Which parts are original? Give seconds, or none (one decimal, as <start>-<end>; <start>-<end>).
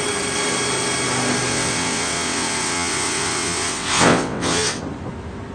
0.0-1.5; 4.8-5.5